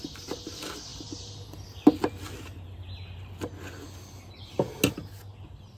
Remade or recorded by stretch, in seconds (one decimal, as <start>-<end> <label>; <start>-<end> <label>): 0.0-5.8 recorded